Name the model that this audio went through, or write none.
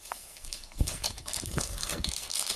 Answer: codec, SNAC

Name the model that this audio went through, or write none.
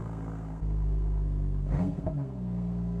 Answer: codec, SNAC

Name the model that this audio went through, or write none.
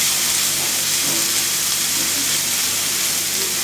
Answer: none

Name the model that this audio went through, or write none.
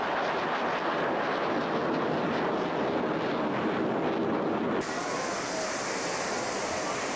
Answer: none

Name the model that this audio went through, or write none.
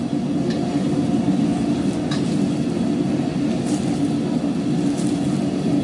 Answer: none